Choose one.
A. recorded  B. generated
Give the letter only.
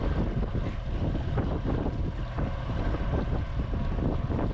A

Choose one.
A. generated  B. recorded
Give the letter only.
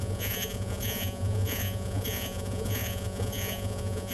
A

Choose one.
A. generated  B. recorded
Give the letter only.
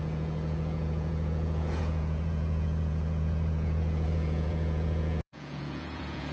A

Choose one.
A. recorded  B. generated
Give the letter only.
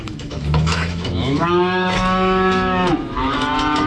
B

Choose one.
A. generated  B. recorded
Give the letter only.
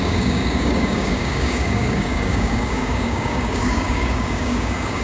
A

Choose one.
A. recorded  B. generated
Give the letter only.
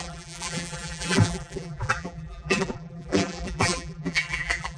B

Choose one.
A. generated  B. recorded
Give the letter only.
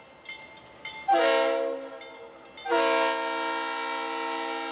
B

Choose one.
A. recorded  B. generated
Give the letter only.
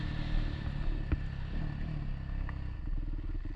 A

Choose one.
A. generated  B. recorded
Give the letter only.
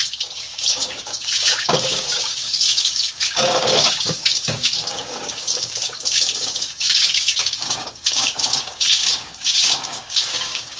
A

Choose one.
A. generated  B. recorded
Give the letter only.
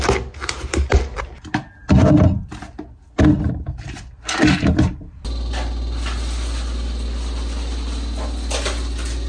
B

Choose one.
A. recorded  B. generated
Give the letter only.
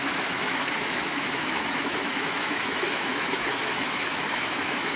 B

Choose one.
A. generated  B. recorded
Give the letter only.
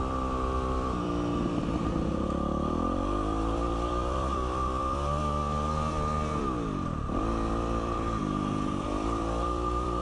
A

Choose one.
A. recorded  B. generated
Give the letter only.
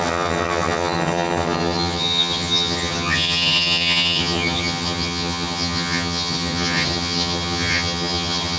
B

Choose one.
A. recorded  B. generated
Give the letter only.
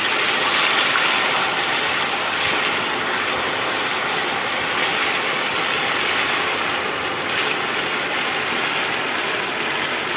A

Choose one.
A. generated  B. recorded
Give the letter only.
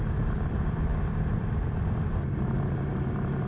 A